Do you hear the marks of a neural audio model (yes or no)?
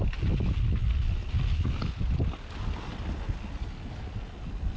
no